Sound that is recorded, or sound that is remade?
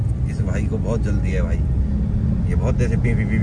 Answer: recorded